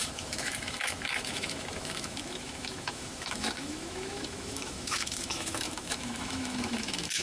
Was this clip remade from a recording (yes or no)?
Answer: yes